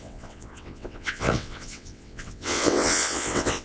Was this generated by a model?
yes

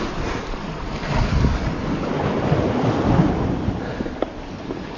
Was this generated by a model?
no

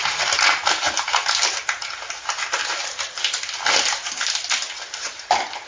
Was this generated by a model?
no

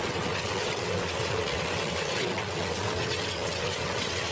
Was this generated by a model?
yes